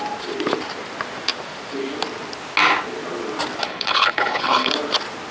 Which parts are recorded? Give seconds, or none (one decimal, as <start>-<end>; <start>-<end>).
0.0-3.6; 4.7-5.3